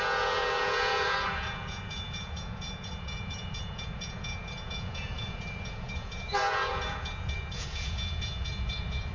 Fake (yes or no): yes